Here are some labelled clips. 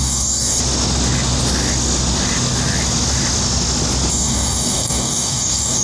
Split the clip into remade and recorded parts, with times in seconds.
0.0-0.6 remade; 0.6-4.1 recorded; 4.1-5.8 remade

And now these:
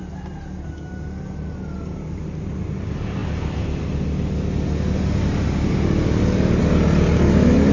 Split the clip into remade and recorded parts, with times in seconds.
0.0-7.7 recorded

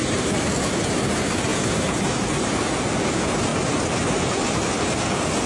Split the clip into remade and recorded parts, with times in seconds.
0.0-5.5 recorded

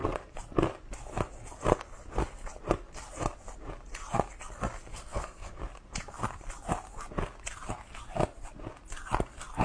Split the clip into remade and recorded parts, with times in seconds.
0.0-4.9 recorded; 4.9-5.6 remade; 5.6-9.6 recorded

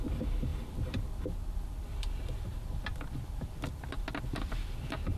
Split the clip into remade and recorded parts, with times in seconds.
0.0-5.2 recorded

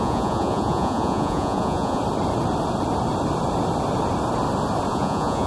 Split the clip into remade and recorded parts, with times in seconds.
0.0-2.0 remade; 2.0-4.9 recorded; 4.9-5.5 remade

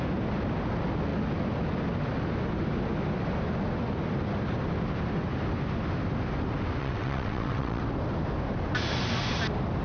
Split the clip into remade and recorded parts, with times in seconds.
0.0-6.8 recorded; 6.8-7.8 remade; 7.8-9.8 recorded

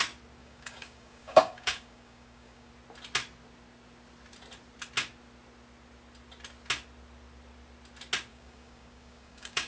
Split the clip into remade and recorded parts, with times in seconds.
0.0-0.4 recorded; 0.4-2.7 remade; 2.7-8.3 recorded; 8.3-9.7 remade